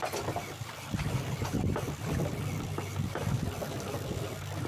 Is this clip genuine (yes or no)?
yes